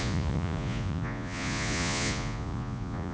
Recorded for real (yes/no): no